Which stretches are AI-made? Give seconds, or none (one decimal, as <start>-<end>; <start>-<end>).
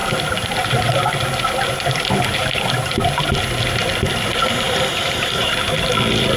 4.9-5.5